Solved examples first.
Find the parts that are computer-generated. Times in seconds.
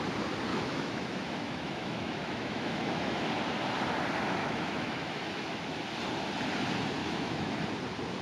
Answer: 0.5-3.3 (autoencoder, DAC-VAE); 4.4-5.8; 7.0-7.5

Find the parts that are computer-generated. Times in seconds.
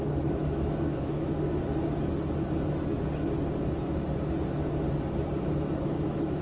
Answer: 0.0-1.6 (autoencoder, DAC-VAE); 5.4-6.4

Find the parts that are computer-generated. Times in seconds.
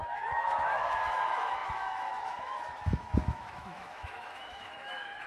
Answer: 0.0-5.3 (autoencoder, DAC-VAE)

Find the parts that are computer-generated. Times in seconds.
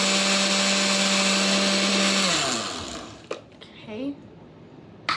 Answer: none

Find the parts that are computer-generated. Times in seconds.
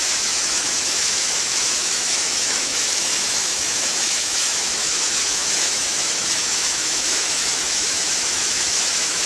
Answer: 0.0-9.3 (autoencoder, DAC-VAE)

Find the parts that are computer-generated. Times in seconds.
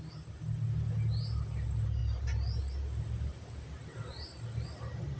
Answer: none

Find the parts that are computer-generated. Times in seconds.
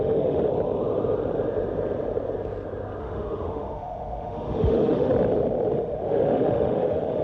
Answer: 0.0-0.5 (autoencoder, DAC-VAE); 3.0-5.1; 5.7-7.2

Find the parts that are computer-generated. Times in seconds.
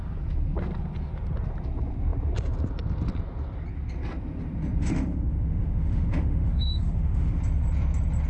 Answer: 4.8-7.4 (autoencoder, DAC-VAE)